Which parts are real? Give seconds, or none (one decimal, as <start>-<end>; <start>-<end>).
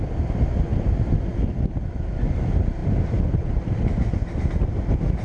0.0-5.2